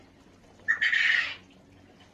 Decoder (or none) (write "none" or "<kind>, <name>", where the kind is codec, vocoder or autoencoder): none